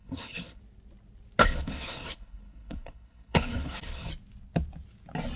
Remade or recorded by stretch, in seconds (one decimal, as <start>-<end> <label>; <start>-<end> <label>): 0.0-0.6 remade; 0.6-1.4 recorded; 1.4-4.1 remade; 4.1-5.4 recorded